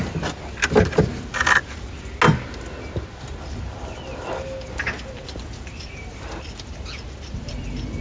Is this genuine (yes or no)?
yes